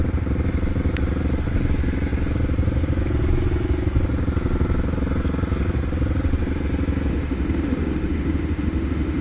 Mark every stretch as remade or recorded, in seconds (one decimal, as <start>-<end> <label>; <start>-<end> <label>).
0.0-7.1 recorded; 7.1-9.2 remade